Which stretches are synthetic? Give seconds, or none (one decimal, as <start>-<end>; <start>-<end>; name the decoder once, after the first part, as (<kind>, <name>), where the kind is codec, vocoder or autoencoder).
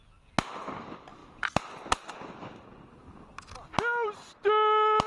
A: none